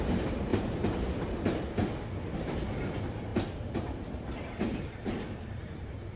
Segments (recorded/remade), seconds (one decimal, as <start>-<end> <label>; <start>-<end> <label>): 0.0-0.5 recorded; 0.5-1.0 remade; 1.0-3.3 recorded; 3.3-6.2 remade